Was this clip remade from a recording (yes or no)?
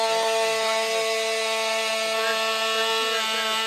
no